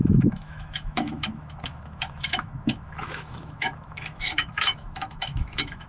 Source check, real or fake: fake